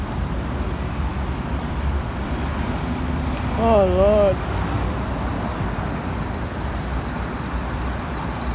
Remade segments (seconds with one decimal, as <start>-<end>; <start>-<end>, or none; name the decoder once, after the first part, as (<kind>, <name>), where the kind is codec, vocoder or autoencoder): 1.1-2.7 (vocoder, BigVGAN v2)